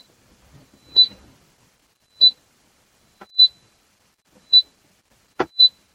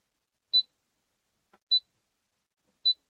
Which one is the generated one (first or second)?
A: first